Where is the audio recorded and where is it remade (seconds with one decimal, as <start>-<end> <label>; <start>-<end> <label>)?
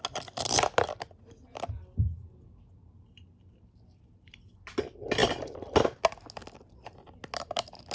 0.0-7.9 recorded